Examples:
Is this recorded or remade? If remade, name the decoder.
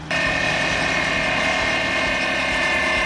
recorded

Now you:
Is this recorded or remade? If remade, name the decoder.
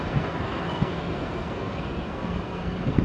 remade, codec, SNAC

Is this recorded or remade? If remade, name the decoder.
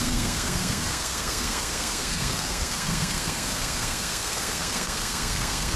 remade, codec, SNAC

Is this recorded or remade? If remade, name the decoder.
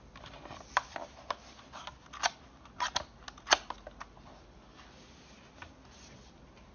recorded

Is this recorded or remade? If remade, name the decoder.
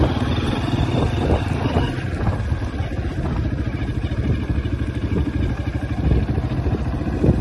recorded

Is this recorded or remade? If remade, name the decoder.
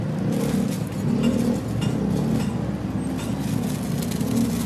recorded